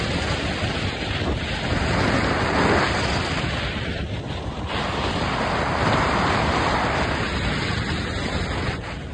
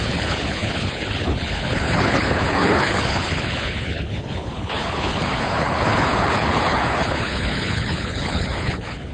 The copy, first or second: second